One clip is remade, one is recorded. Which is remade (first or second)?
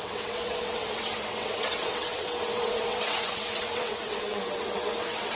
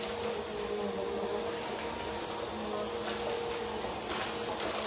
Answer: first